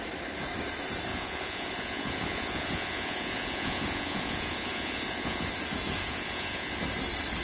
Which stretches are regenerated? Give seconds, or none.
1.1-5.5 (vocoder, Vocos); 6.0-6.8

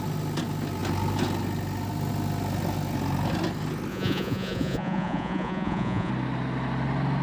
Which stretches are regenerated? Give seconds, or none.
3.9-6.1 (vocoder, Vocos)

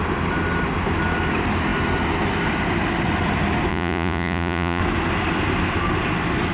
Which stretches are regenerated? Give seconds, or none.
3.7-4.8 (vocoder, Vocos)

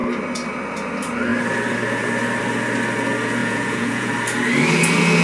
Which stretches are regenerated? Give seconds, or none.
3.4-4.1 (vocoder, Vocos)

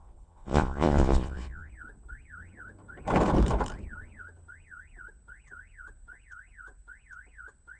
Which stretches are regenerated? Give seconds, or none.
0.0-1.7 (vocoder, Vocos)